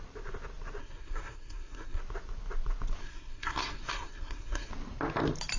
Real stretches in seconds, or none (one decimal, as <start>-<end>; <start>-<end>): 0.0-0.8; 2.0-3.0; 4.7-5.6

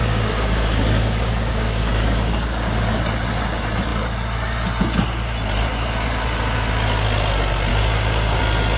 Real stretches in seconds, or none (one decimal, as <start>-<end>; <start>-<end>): 3.0-7.7; 8.4-8.8

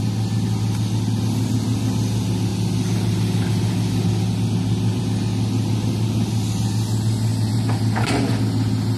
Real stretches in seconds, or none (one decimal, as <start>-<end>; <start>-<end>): 0.0-7.3; 8.3-9.0

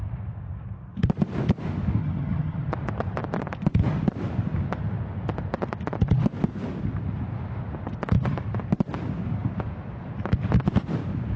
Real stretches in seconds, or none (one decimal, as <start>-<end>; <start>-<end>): 0.0-2.0; 2.7-11.4

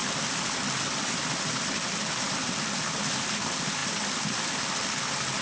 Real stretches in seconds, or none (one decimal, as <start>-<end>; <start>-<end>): 0.0-5.4

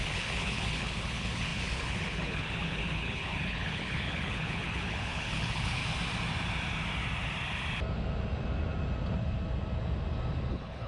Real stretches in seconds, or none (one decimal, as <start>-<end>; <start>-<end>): 5.8-10.5

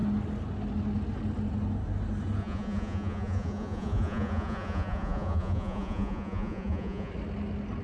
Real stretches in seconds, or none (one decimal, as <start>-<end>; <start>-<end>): 0.0-2.4; 7.1-7.8

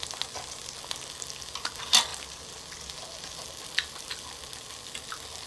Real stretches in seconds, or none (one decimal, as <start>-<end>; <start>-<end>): 0.0-5.5